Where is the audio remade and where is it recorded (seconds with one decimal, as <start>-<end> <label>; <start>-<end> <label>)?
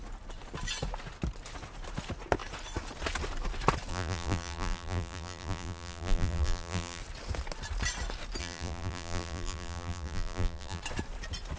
0.0-3.9 recorded; 3.9-7.0 remade; 7.0-8.4 recorded; 8.4-10.8 remade; 10.8-11.6 recorded